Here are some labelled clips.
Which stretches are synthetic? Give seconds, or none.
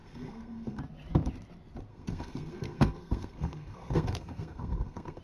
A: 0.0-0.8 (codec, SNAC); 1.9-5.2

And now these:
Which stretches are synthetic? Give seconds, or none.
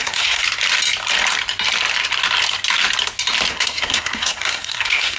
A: 0.0-0.4 (codec, SNAC); 3.5-5.2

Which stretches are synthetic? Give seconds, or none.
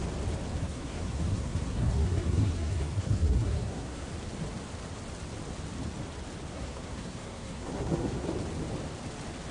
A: 0.6-4.1 (codec, SNAC); 6.5-8.3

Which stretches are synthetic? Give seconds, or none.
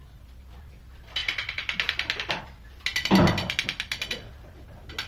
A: none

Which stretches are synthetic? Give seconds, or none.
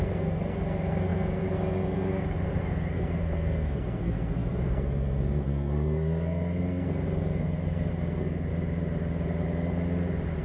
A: 0.0-8.5 (codec, SNAC)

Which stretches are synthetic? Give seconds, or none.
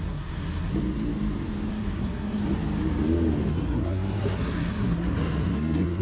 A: 0.0-0.7 (codec, SNAC); 1.7-2.4; 3.5-6.0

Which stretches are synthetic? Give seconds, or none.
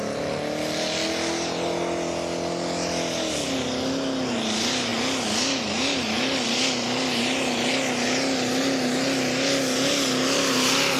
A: none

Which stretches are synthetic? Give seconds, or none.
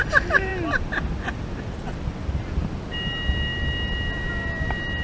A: none